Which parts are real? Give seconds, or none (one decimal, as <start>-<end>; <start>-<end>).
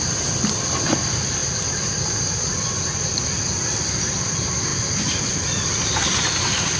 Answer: 0.0-6.8